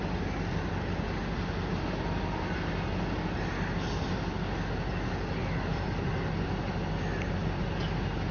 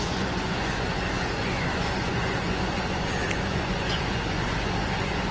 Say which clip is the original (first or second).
first